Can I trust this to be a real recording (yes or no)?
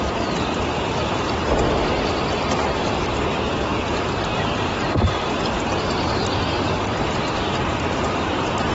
no